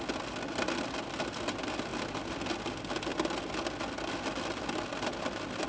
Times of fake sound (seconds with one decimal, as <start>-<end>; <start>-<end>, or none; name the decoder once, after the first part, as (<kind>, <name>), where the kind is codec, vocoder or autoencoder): none